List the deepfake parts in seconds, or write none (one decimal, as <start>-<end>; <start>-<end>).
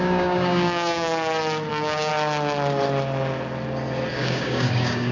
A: 0.0-1.1; 1.7-2.1; 4.1-5.1